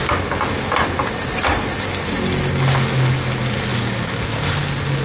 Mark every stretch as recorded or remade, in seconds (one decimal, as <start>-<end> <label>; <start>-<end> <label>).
0.0-5.0 recorded